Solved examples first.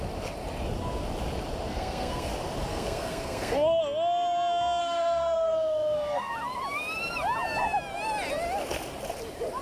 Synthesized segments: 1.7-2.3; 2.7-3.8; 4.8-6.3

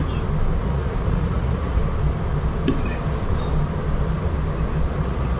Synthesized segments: 0.6-1.8; 5.0-5.4

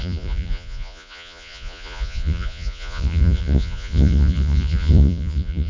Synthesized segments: 0.0-5.7

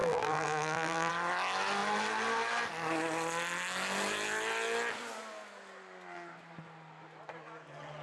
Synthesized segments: 0.0-1.1